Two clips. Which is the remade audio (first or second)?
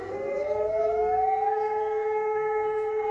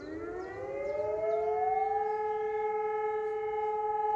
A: first